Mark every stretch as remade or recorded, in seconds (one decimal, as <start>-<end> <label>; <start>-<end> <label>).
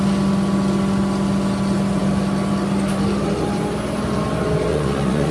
0.0-4.7 recorded; 4.7-5.3 remade